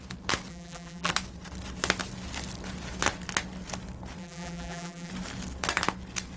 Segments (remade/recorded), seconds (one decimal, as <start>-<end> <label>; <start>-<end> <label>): 0.0-0.5 recorded; 0.5-1.1 remade; 1.1-4.2 recorded; 4.2-5.1 remade; 5.1-6.4 recorded